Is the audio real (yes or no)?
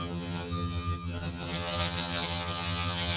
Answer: no